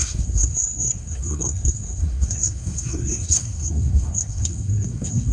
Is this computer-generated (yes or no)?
yes